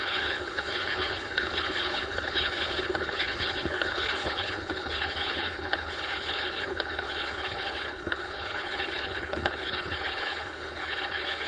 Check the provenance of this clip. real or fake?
fake